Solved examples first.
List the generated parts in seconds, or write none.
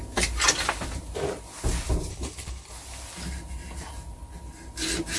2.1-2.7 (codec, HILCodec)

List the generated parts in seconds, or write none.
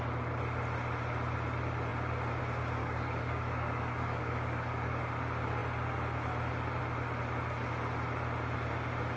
2.8-5.0 (codec, DAC)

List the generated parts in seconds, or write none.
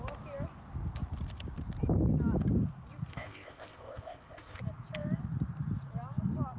3.1-4.6 (codec, ZipCodec)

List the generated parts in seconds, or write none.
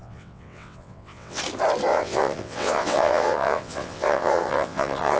0.0-1.4 (vocoder, WaveNeXt); 1.9-5.2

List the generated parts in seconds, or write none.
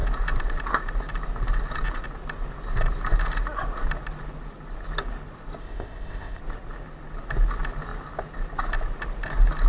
5.6-6.4 (codec, ZipCodec)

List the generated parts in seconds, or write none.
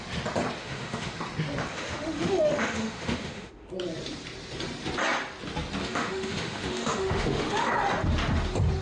0.6-1.2 (autoencoder, DAC-VAE); 1.7-3.7; 5.8-7.7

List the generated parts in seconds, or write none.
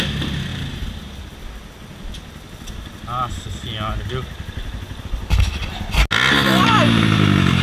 none